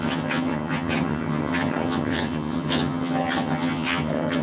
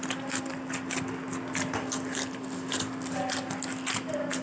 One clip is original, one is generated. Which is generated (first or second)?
first